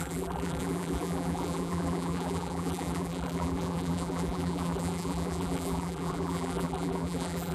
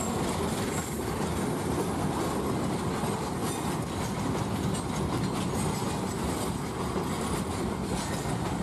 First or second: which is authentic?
second